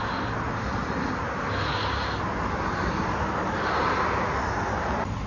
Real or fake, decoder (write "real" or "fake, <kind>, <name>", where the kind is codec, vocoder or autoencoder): real